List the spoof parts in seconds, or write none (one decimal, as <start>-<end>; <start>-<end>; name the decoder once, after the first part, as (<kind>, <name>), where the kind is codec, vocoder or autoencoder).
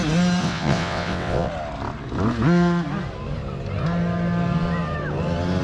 0.4-1.5 (vocoder, WaveNeXt)